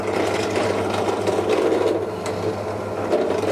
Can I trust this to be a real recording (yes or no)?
yes